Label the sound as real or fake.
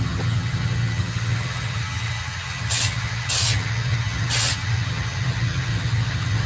fake